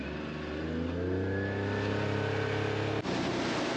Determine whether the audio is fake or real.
real